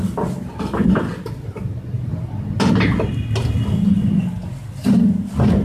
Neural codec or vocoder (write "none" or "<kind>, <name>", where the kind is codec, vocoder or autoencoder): none